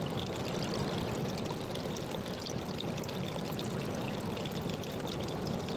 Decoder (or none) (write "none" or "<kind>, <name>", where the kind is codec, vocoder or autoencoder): none